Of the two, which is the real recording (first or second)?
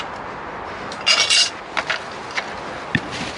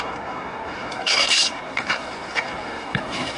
first